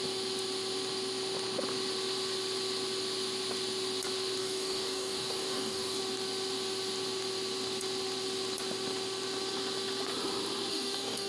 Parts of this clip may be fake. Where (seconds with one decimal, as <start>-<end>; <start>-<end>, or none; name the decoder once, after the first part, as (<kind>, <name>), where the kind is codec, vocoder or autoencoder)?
4.4-6.0 (codec, DAC); 10.7-11.3